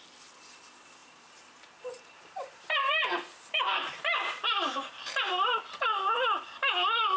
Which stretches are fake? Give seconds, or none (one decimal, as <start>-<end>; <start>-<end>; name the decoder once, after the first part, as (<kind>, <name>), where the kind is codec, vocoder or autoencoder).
1.0-5.3 (vocoder, BigVGAN v2)